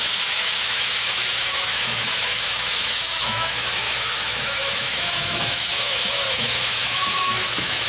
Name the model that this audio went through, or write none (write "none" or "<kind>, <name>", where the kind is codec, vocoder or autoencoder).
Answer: autoencoder, DAC-VAE